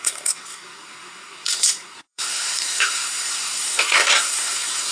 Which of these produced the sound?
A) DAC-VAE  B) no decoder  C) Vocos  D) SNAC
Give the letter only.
D